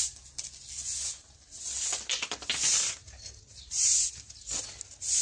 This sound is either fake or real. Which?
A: real